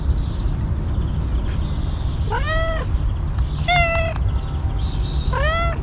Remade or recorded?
recorded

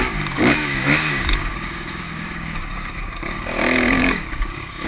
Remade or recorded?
remade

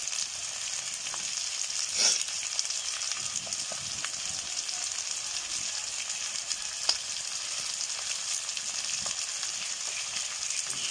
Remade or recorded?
recorded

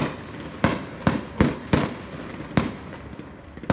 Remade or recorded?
recorded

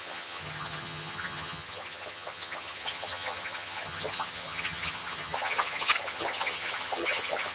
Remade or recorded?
remade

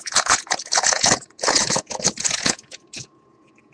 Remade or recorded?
remade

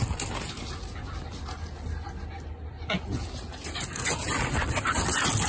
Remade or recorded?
recorded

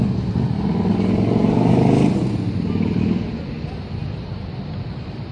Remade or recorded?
recorded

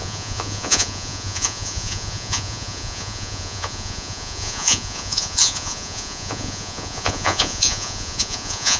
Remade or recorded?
remade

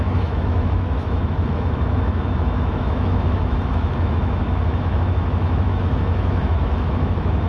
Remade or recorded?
remade